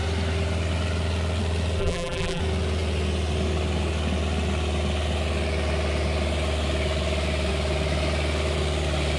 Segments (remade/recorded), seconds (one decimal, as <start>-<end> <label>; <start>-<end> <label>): 0.0-1.8 recorded; 1.8-2.4 remade; 2.4-9.2 recorded